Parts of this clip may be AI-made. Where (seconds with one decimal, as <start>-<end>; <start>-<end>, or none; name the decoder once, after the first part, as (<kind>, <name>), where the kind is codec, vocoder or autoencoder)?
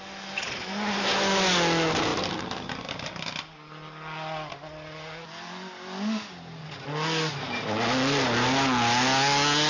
none